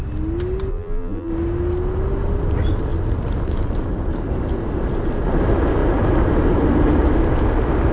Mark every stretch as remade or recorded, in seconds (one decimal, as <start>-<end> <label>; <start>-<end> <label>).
0.0-0.7 recorded; 0.7-1.3 remade; 1.3-7.9 recorded